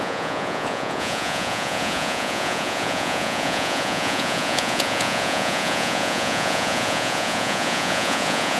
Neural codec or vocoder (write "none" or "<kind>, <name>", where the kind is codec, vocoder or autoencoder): vocoder, Vocos